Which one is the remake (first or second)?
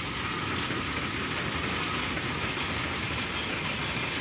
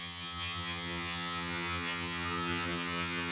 second